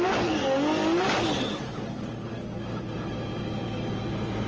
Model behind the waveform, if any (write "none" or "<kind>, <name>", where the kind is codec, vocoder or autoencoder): none